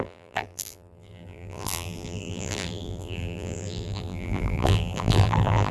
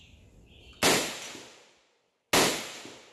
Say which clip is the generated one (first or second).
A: first